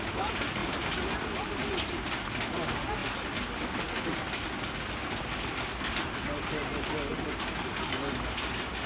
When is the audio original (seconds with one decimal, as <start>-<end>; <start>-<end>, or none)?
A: 0.0-0.6; 2.1-8.9